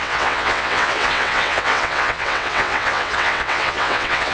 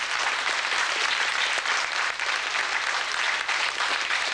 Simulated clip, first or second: first